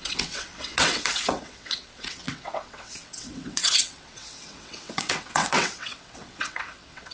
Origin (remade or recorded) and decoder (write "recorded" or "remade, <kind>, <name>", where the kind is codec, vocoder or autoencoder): remade, vocoder, WaveNeXt